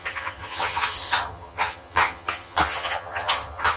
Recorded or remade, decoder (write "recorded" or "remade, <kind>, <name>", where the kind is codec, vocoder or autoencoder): remade, vocoder, HiFi-GAN